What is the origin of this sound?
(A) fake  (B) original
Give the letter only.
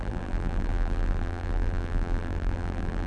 A